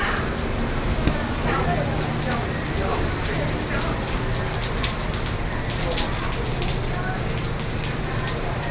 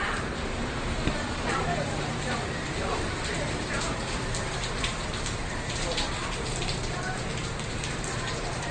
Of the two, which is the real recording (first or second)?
first